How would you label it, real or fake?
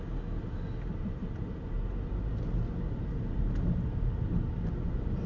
real